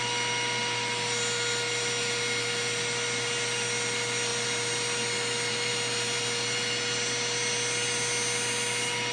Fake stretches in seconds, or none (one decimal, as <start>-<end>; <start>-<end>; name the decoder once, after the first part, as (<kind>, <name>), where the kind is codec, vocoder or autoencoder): none